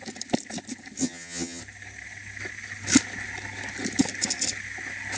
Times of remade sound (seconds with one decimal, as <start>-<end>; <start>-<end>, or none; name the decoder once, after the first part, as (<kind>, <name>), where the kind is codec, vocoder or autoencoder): 1.0-1.6 (vocoder, HiFi-GAN)